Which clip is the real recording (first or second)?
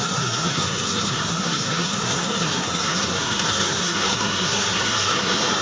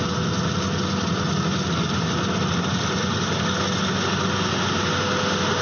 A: second